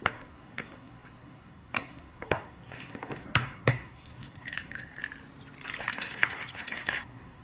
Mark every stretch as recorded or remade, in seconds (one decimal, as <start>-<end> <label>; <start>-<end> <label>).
0.0-5.0 remade; 5.0-5.8 recorded; 5.8-7.4 remade